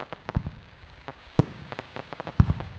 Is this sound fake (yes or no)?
yes